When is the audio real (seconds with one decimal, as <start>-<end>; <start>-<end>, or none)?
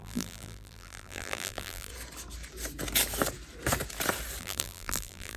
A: 1.9-4.4